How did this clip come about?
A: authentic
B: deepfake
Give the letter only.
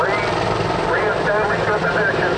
A